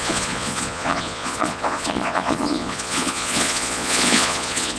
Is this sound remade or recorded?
remade